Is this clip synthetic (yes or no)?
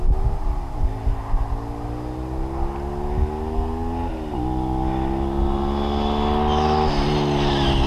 no